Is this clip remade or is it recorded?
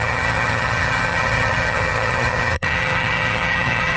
remade